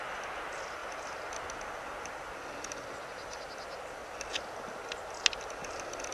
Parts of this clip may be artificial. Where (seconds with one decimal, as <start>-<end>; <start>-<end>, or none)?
none